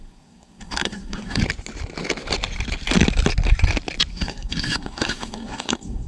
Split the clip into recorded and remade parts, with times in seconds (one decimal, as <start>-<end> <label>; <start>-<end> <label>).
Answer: 0.0-1.4 remade; 1.4-4.1 recorded; 4.1-6.1 remade